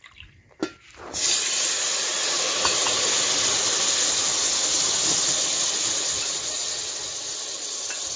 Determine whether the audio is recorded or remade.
recorded